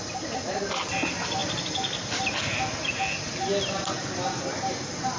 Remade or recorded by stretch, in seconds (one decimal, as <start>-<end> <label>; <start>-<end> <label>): 0.0-5.2 recorded